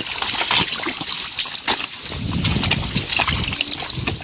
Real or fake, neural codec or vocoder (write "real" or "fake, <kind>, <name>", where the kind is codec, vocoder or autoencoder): real